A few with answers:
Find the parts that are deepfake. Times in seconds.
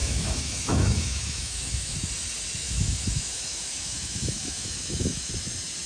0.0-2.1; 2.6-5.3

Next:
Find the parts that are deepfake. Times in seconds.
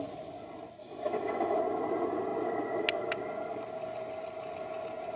0.8-1.6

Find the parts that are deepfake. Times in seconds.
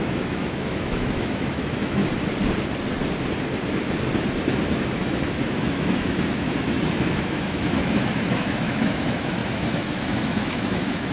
0.0-2.0; 4.7-11.1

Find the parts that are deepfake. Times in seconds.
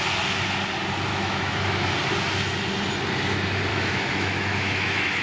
1.1-1.9; 3.7-5.2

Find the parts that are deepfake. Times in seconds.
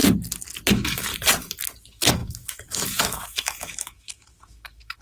0.7-1.1; 1.8-5.0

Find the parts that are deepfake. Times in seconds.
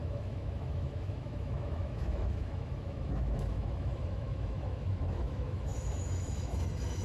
0.0-7.0